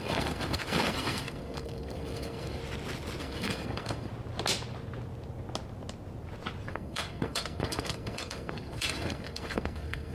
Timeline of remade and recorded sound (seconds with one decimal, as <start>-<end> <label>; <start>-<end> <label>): 0.0-2.6 remade; 2.6-3.2 recorded; 3.2-4.1 remade; 4.1-6.7 recorded; 6.7-10.1 remade